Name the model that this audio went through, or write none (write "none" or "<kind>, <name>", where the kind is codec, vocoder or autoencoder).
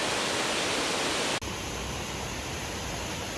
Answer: none